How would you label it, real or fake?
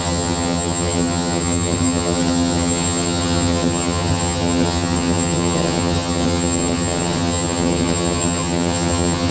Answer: fake